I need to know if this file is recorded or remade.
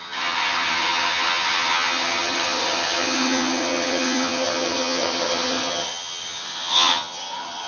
remade